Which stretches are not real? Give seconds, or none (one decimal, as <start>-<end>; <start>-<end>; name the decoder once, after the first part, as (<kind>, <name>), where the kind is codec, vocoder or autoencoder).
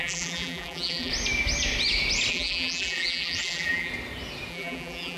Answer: 0.0-1.1 (vocoder, BigVGAN v2); 2.3-3.9; 4.5-5.2